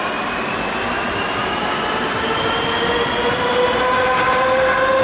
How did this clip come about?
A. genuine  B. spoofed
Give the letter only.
A